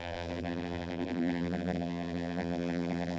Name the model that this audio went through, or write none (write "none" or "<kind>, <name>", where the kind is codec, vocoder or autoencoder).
vocoder, BigVGAN v2